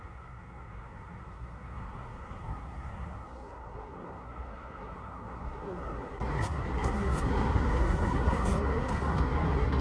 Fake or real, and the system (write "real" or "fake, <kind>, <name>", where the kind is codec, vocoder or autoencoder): fake, codec, SNAC